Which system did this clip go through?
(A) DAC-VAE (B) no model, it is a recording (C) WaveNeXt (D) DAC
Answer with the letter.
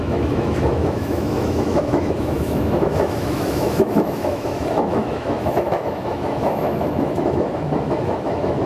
A